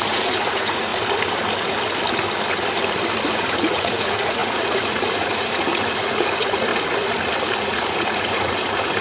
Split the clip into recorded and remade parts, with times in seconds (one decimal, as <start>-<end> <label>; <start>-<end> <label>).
0.0-0.9 remade; 0.9-3.3 recorded; 3.3-6.7 remade; 6.7-7.6 recorded; 7.6-9.0 remade